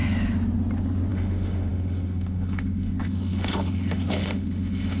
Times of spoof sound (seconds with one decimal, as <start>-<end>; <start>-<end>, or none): 1.1-5.0